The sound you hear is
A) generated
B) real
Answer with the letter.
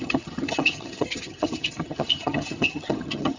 A